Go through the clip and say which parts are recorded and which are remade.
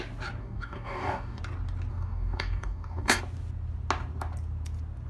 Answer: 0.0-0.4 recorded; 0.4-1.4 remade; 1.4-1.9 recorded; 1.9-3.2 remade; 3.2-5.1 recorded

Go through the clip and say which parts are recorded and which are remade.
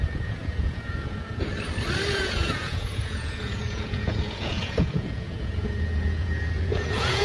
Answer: 0.0-1.5 remade; 1.5-2.1 recorded; 2.1-7.2 remade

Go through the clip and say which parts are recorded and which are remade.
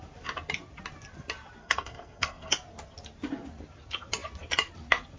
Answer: 0.0-1.6 recorded; 1.6-2.5 remade; 2.5-5.2 recorded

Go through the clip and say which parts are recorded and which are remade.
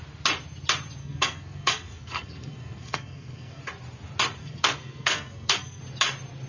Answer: 0.0-1.0 recorded; 1.0-3.6 remade; 3.6-4.4 recorded; 4.4-5.8 remade; 5.8-6.5 recorded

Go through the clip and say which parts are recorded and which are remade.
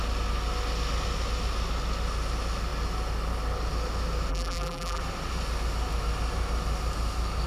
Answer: 0.0-4.3 recorded; 4.3-5.0 remade; 5.0-7.5 recorded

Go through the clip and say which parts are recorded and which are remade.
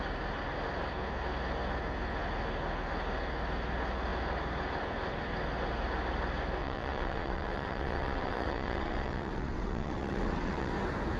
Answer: 0.0-6.6 recorded; 6.6-10.7 remade; 10.7-11.2 recorded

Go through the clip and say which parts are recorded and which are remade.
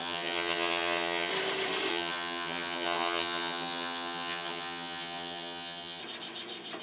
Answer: 0.0-1.3 remade; 1.3-1.9 recorded; 1.9-6.0 remade; 6.0-6.8 recorded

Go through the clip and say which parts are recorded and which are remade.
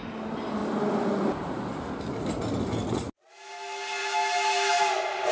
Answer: 0.0-4.0 recorded; 4.0-4.8 remade; 4.8-5.3 recorded